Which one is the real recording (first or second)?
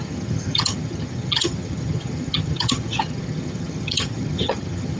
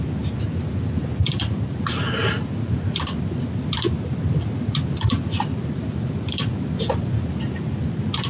second